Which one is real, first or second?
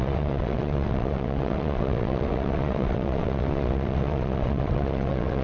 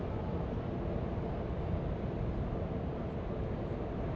second